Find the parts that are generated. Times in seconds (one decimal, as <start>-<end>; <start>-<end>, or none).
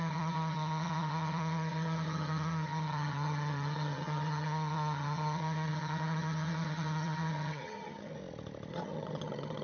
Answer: 0.0-8.2; 8.7-9.6